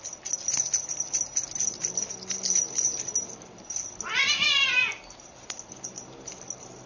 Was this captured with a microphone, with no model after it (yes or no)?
yes